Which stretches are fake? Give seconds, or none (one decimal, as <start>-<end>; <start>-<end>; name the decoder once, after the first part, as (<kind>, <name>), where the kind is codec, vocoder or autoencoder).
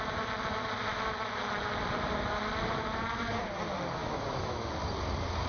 4.0-4.7 (autoencoder, DAC-VAE)